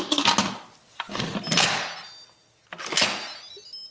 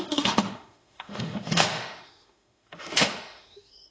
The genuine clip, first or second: first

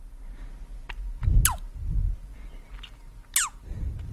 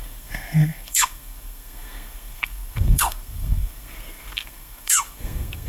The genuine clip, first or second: first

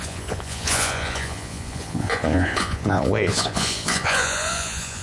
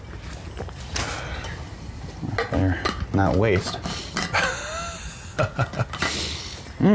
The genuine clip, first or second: second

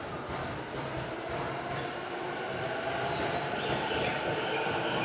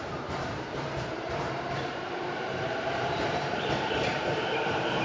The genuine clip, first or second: first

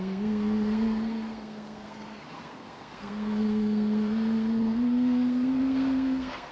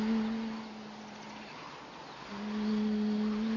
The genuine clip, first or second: second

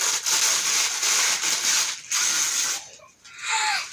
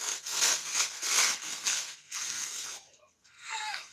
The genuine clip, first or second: first